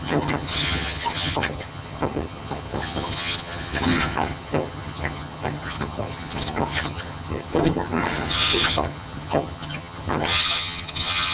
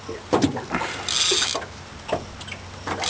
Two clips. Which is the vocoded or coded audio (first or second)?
first